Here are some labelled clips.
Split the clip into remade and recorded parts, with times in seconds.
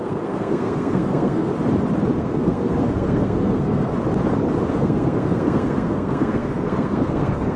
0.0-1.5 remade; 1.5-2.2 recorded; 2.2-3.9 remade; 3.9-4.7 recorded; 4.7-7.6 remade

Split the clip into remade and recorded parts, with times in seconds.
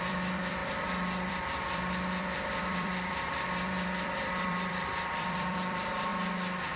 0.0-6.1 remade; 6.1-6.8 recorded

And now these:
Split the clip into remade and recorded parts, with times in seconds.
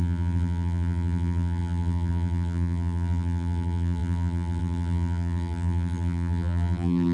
0.0-7.1 remade